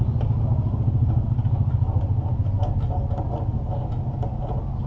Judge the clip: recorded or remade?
recorded